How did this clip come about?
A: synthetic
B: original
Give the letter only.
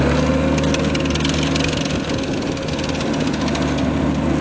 B